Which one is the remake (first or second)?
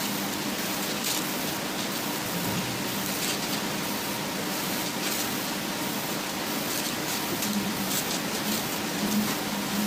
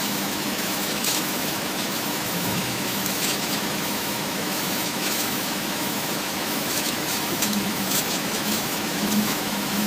second